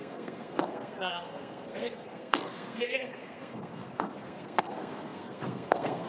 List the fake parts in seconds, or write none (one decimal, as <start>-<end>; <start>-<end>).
0.0-6.1